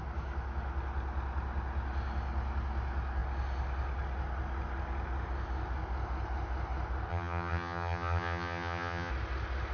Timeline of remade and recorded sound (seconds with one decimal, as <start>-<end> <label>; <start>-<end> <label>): 0.0-7.1 recorded; 7.1-9.1 remade; 9.1-9.7 recorded